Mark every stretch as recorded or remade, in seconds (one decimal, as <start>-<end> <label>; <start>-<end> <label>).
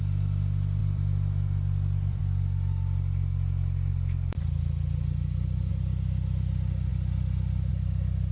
0.0-0.8 recorded; 0.8-2.2 remade; 2.2-3.9 recorded; 3.9-5.7 remade; 5.7-6.9 recorded; 6.9-7.7 remade; 7.7-8.3 recorded